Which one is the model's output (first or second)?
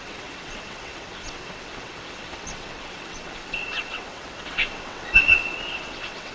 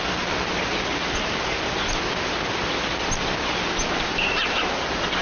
first